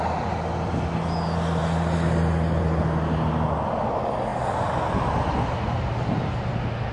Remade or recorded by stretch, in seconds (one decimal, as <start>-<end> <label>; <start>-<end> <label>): 0.0-6.9 recorded